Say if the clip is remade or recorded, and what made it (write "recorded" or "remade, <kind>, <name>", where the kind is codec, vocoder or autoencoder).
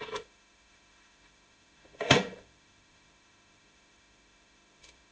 remade, autoencoder, DAC-VAE